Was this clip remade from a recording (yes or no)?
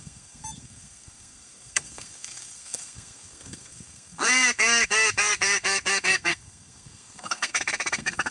yes